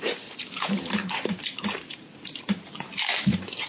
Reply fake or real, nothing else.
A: fake